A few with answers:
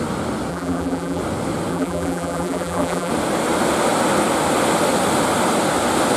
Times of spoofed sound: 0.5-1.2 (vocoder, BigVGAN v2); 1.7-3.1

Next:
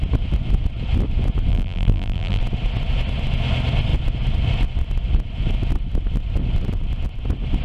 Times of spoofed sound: 1.5-2.4 (vocoder, BigVGAN v2)

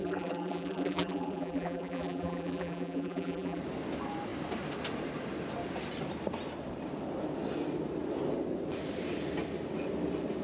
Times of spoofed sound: 0.0-3.6 (vocoder, BigVGAN v2)

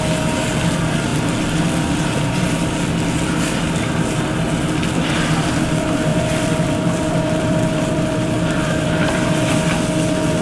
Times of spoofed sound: 6.1-9.1 (vocoder, BigVGAN v2)